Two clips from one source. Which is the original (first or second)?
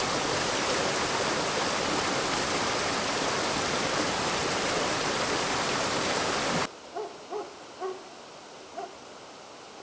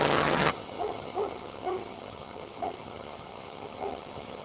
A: first